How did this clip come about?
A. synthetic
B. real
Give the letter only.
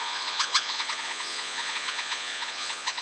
A